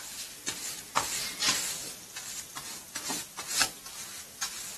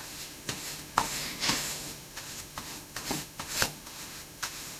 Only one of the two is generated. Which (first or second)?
second